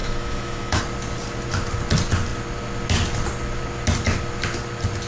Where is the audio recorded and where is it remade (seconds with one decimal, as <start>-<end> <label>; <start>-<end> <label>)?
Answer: 0.0-0.8 remade; 0.8-5.1 recorded